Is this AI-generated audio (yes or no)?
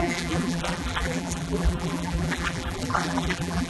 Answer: yes